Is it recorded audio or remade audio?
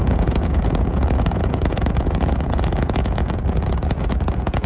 remade